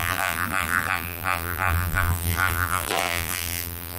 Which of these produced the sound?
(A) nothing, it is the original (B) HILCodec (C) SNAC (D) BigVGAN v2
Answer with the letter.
D